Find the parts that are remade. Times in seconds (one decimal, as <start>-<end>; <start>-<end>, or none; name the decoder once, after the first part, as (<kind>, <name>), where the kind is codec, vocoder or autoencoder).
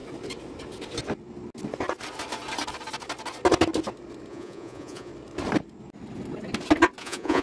4.3-5.1 (vocoder, Vocos); 7.0-7.4